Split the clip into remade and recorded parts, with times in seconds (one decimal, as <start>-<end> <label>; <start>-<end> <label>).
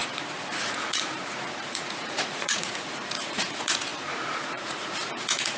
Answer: 0.0-5.6 remade